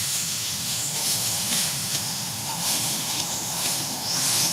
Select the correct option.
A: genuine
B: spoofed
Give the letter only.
B